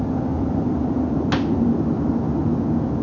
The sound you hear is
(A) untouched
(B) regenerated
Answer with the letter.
A